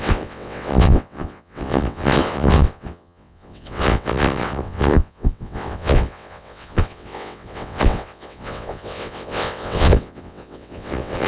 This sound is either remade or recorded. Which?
remade